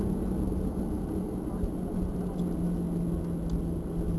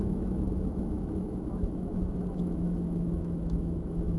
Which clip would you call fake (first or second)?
second